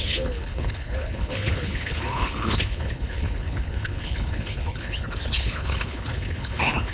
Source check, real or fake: fake